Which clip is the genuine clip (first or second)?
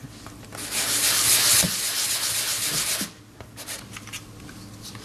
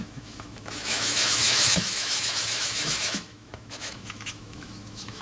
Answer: first